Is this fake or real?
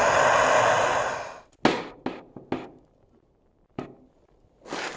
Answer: real